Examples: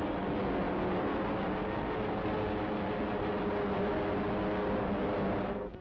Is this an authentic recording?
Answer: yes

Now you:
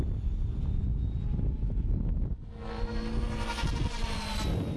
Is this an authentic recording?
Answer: yes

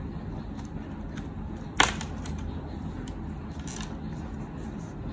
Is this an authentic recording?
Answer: yes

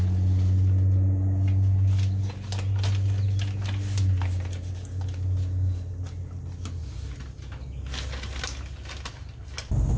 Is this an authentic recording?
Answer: yes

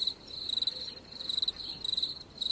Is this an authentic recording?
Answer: yes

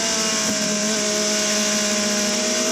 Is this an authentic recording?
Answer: yes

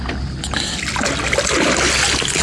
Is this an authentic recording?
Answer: yes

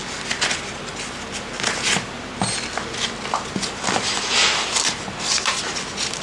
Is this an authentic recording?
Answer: yes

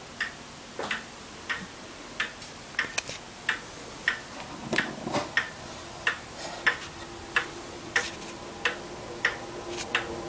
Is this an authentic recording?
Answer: yes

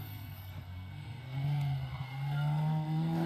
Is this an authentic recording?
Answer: no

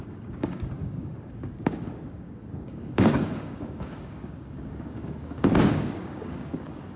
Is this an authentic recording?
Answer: no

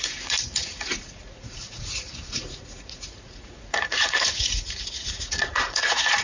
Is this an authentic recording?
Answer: no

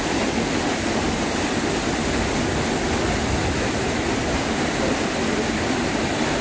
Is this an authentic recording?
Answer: yes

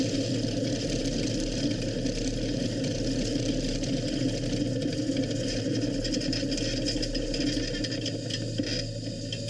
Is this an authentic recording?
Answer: yes